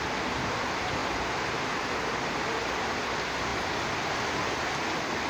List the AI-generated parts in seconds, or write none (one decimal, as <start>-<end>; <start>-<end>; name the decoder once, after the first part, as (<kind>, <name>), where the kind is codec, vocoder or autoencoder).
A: none

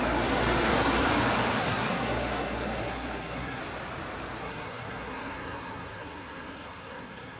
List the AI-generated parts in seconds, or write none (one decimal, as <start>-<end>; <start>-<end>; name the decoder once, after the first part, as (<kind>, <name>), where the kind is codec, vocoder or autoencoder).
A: 0.0-1.0 (codec, SNAC); 1.6-3.6; 4.4-7.4

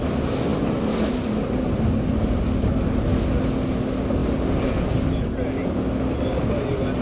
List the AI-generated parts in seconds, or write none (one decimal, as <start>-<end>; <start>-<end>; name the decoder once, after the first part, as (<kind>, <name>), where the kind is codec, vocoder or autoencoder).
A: none

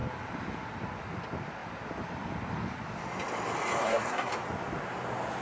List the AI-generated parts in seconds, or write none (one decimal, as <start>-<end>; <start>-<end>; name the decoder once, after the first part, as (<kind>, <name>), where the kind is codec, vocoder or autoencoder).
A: 3.8-4.3 (codec, SNAC)

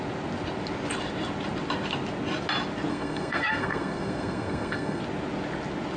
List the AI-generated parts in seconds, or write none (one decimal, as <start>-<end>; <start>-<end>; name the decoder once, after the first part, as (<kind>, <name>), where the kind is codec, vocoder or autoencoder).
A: 2.9-5.0 (codec, SNAC)

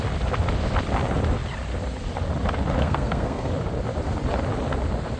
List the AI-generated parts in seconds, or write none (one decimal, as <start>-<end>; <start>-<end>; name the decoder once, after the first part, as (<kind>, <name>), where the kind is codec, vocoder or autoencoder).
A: 2.8-3.5 (codec, SNAC)